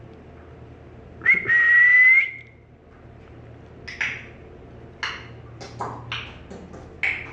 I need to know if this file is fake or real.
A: real